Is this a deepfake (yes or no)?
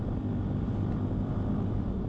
yes